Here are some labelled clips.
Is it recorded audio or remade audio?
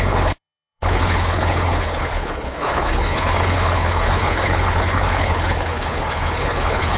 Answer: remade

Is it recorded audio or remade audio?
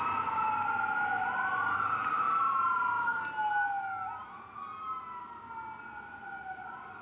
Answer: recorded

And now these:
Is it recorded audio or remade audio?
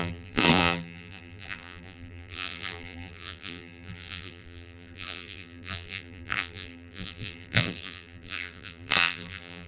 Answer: remade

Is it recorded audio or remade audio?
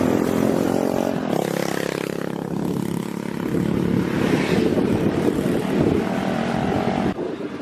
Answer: recorded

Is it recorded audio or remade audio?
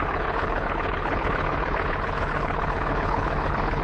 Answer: remade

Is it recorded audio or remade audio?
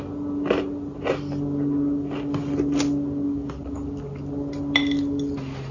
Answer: recorded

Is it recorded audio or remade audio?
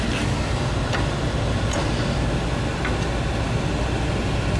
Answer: recorded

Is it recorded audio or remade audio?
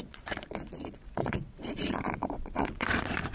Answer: remade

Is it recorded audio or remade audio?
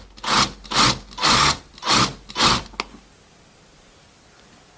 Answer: recorded